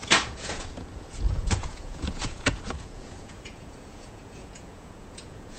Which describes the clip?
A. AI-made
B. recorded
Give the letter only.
A